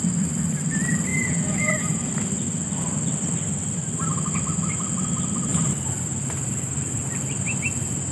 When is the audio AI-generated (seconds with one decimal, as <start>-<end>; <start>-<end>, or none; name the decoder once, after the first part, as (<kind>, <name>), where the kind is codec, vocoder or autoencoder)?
1.1-2.1 (vocoder, BigVGAN v2); 5.5-6.8